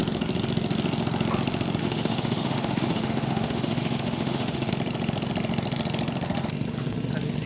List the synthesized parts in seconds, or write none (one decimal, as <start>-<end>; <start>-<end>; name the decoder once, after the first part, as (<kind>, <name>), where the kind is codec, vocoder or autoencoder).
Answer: 1.8-4.7 (autoencoder, DAC-VAE)